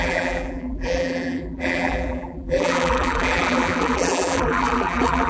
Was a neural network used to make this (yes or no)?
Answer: yes